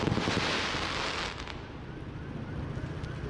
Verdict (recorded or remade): recorded